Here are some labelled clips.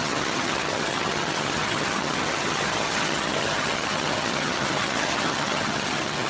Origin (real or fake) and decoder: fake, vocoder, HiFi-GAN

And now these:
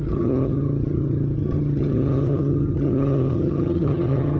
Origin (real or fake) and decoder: fake, vocoder, HiFi-GAN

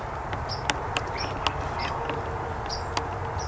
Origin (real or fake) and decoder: real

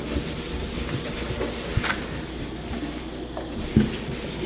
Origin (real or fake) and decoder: real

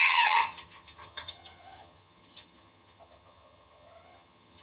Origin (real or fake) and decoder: fake, vocoder, HiFi-GAN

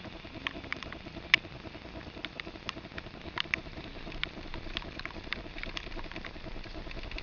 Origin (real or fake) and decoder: real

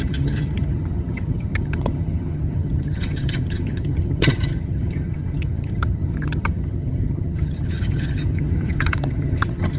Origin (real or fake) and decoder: fake, vocoder, HiFi-GAN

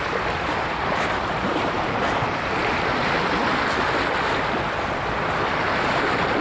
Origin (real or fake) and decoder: real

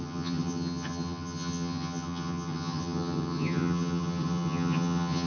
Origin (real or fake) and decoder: fake, vocoder, HiFi-GAN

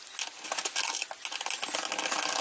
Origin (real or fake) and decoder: real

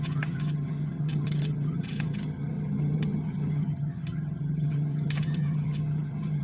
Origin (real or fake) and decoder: fake, vocoder, HiFi-GAN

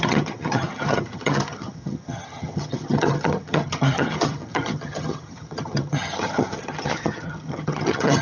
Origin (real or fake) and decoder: fake, vocoder, HiFi-GAN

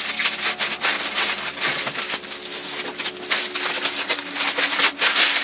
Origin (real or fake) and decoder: real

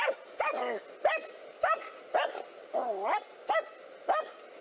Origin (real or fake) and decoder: real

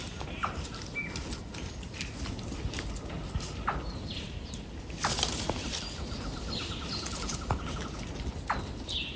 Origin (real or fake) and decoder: real